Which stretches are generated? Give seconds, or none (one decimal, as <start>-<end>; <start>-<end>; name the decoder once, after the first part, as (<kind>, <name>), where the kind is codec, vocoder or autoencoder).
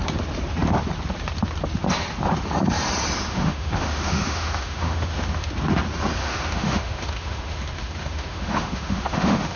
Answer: 3.3-5.5 (autoencoder, DAC-VAE); 6.2-9.6